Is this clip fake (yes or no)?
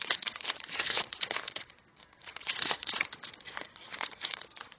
yes